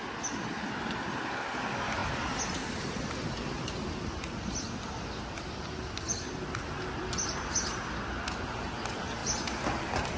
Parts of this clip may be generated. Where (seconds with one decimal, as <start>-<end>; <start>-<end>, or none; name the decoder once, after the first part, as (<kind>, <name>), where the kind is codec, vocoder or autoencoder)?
none